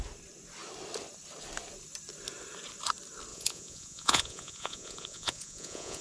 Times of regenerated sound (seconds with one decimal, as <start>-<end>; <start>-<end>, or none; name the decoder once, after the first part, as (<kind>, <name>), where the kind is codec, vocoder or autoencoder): 3.3-6.0 (vocoder, Vocos)